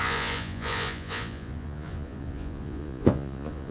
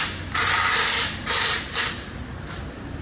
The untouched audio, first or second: second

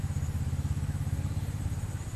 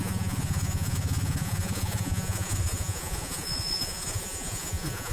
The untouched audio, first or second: first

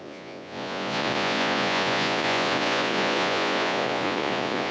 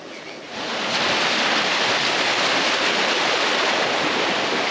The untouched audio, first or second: second